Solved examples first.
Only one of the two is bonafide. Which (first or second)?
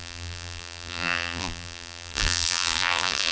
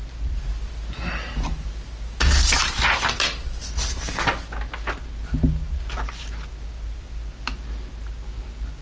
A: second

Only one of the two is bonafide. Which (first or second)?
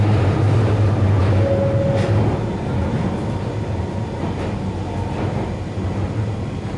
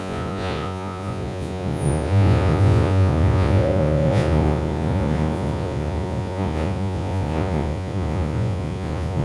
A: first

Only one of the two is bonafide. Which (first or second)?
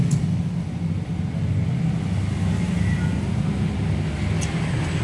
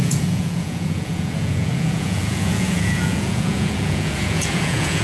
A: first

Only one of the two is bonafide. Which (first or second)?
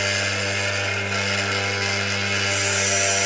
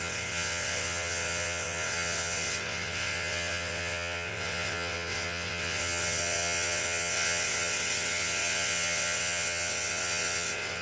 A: first